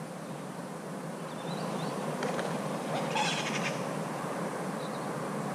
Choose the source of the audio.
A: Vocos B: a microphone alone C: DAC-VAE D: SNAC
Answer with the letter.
B